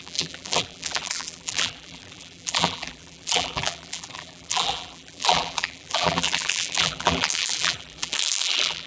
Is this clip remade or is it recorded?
remade